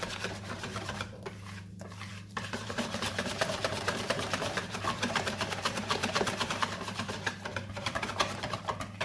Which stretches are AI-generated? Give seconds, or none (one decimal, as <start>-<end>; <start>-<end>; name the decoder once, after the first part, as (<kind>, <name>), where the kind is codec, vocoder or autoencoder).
0.0-9.0 (vocoder, BigVGAN v2)